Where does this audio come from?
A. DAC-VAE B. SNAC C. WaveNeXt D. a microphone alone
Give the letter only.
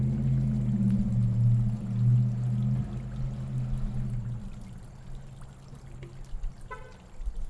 D